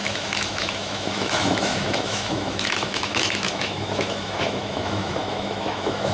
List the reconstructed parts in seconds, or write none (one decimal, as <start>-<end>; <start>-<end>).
0.0-6.1